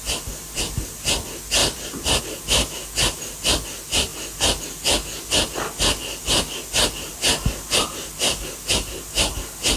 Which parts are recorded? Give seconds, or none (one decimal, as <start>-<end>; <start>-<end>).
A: 0.0-1.6; 2.2-9.8